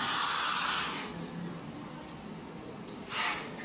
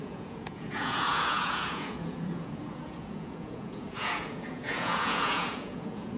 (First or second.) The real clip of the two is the first